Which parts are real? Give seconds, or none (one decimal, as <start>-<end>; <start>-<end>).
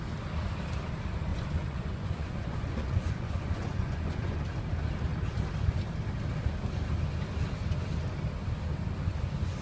0.0-1.3; 4.4-9.6